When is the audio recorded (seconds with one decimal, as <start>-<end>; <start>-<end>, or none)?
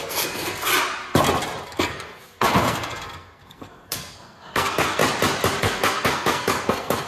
0.7-1.6; 5.0-5.6